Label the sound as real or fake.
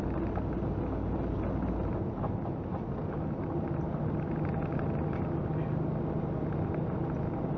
real